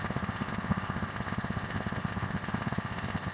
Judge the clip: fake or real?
fake